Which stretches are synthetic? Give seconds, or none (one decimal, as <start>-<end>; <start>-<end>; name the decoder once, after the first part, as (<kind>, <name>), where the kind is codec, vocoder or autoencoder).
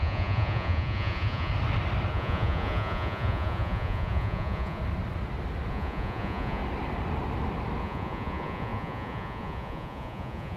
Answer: 0.0-1.5 (vocoder, Vocos); 2.1-4.8; 5.7-6.6; 7.8-10.6